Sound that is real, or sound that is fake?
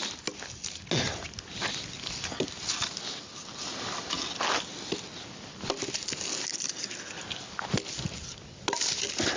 real